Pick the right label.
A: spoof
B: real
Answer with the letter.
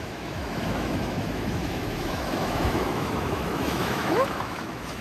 A